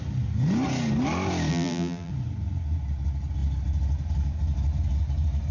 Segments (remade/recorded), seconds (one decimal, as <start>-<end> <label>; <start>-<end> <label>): 0.0-1.5 recorded; 1.5-2.1 remade; 2.1-5.5 recorded